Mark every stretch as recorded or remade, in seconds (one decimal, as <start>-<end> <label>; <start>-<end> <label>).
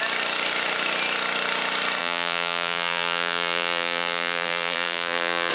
0.0-2.0 recorded; 2.0-5.5 remade